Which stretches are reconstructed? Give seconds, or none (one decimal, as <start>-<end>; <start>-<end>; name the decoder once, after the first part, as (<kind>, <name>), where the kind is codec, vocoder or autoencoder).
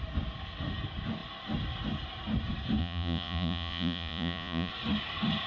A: 2.8-4.7 (vocoder, Vocos)